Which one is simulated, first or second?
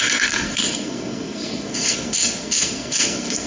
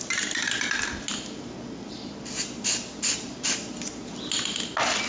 first